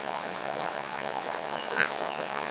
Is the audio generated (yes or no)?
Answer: yes